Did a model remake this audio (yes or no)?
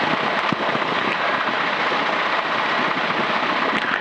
no